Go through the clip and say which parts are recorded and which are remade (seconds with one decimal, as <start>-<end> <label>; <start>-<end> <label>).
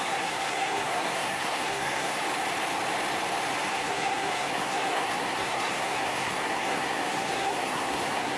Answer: 0.0-2.2 remade; 2.2-3.7 recorded; 3.7-8.4 remade